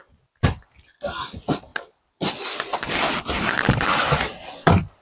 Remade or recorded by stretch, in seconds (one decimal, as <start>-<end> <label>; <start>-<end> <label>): 0.0-5.0 recorded